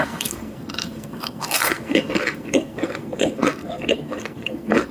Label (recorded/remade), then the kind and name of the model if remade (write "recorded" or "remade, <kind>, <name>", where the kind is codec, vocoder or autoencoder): remade, codec, SNAC